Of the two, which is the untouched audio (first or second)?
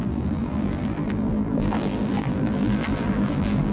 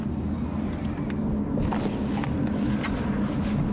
second